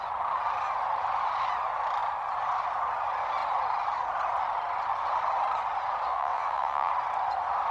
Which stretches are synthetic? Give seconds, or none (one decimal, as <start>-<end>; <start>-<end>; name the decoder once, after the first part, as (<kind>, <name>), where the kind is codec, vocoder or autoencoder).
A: 6.1-6.9 (vocoder, WaveNeXt)